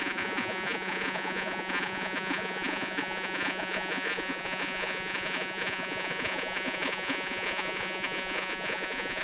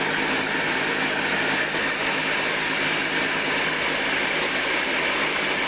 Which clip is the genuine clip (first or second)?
second